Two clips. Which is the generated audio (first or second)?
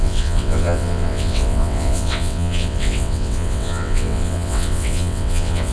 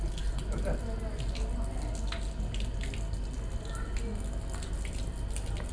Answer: first